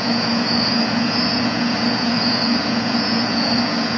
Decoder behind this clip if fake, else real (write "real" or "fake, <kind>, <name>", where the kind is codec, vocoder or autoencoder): fake, vocoder, Vocos